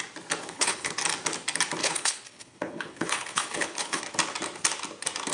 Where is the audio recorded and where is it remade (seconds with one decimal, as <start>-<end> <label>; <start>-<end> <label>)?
0.0-0.4 recorded; 0.4-0.9 remade; 0.9-1.8 recorded; 1.8-4.0 remade; 4.0-5.3 recorded